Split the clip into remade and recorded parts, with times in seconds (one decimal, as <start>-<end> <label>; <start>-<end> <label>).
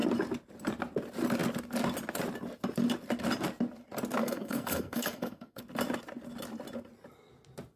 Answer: 0.0-4.2 recorded; 4.2-5.6 remade; 5.6-7.8 recorded